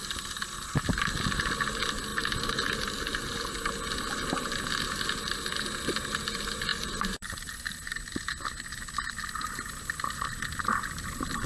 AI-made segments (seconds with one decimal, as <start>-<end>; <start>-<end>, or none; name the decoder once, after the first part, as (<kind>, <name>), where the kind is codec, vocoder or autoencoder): 2.1-3.5 (vocoder, BigVGAN v2); 6.7-8.3